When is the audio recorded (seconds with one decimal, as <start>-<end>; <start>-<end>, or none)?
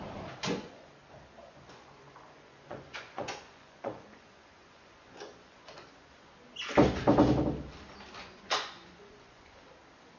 0.0-0.4; 0.9-1.4; 6.3-8.2; 9.6-10.2